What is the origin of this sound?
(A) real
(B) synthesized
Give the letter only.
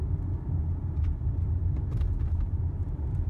A